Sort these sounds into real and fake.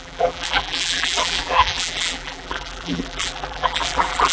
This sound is fake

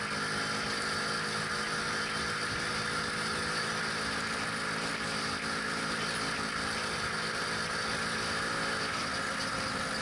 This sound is real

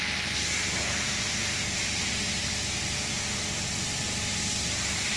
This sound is fake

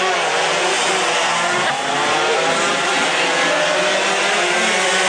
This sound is real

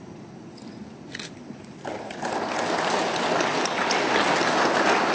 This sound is real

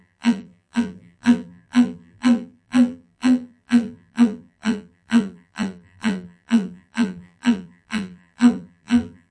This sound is fake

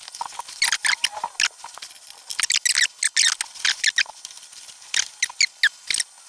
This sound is real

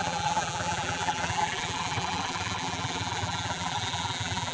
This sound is fake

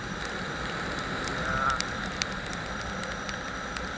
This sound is real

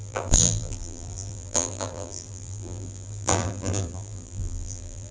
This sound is fake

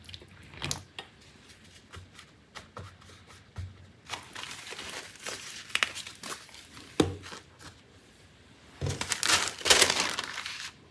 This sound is real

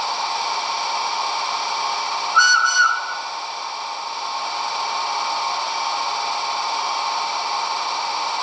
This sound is real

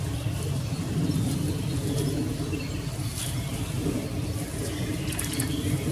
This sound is real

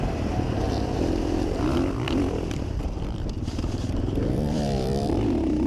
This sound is fake